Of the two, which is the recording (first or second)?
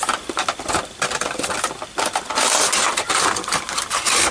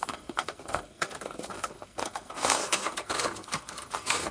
first